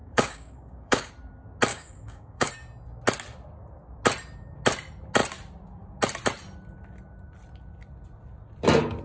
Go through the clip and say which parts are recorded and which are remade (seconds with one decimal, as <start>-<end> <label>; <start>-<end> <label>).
0.0-1.1 remade; 1.1-1.7 recorded; 1.7-2.5 remade; 2.5-9.0 recorded